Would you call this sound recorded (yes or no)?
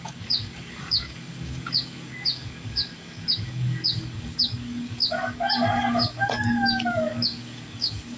no